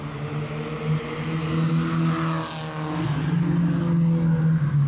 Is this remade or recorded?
recorded